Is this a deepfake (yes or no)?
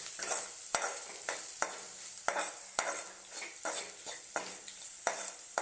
yes